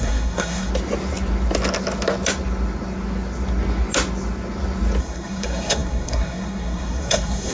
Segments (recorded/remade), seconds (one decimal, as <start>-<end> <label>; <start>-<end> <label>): 0.0-0.7 remade; 0.7-5.0 recorded; 5.0-7.5 remade